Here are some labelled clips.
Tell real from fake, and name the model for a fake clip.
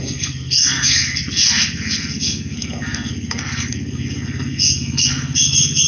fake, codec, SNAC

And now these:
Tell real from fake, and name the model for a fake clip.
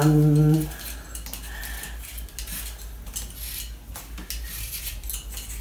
real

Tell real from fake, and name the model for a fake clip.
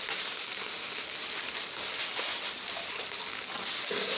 real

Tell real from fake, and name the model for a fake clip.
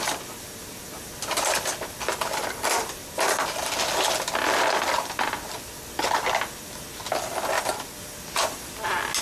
real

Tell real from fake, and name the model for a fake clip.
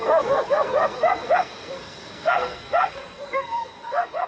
fake, codec, SNAC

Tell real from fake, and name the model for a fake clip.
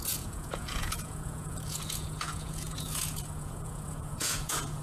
fake, vocoder, Vocos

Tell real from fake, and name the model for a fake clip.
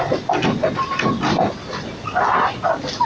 real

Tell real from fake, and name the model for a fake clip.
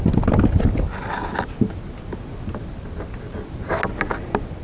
real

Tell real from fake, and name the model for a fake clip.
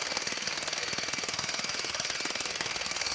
fake, codec, SNAC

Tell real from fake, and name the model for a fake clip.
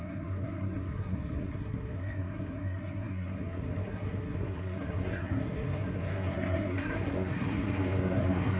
fake, codec, SNAC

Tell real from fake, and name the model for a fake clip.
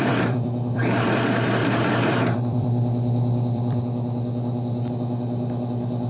fake, vocoder, BigVGAN v2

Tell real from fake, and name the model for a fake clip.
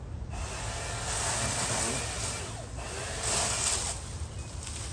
real